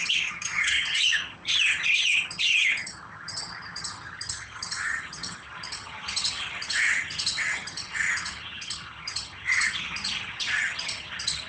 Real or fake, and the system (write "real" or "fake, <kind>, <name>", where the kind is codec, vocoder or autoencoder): fake, vocoder, HiFi-GAN